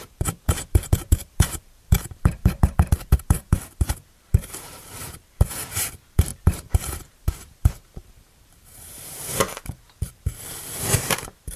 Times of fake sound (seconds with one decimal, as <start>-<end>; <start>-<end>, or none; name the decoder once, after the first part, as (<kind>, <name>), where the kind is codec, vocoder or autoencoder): 0.0-11.6 (vocoder, BigVGAN v2)